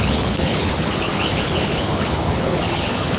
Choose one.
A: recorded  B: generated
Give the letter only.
B